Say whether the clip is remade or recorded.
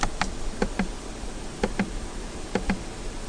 remade